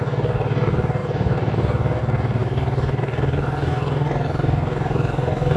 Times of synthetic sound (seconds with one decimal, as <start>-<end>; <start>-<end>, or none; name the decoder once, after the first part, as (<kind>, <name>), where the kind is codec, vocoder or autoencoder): 0.0-5.6 (codec, DAC)

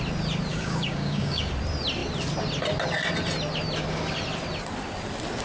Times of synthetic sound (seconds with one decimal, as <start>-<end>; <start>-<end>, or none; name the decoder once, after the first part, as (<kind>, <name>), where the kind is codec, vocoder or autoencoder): 0.5-1.5 (codec, DAC)